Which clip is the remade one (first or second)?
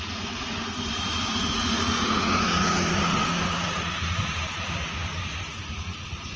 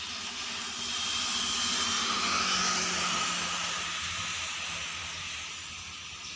first